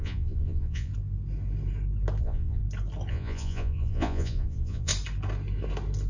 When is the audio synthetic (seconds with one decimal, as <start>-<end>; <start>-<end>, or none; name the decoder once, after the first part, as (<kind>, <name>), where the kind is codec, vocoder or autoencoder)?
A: 0.0-0.9 (vocoder, Vocos); 2.2-2.6; 3.1-4.9